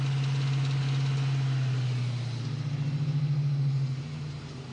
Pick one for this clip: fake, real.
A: real